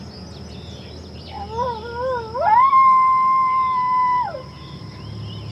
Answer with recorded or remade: recorded